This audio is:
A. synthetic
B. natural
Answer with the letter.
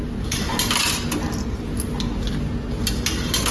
B